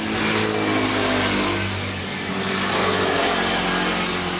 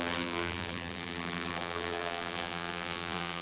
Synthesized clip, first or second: second